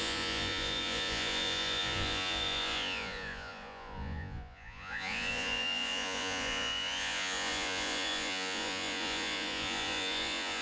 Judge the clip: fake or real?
fake